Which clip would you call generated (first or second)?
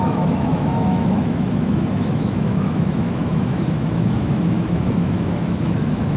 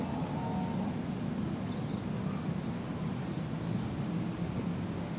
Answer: first